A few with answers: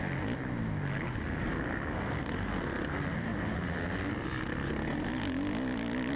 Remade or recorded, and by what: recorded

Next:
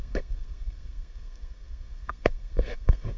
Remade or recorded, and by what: remade, codec, SNAC